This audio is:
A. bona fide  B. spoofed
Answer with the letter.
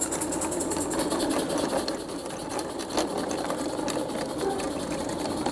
A